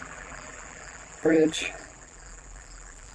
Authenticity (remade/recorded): remade